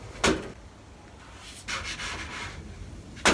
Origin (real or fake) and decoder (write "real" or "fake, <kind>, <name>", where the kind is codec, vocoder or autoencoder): real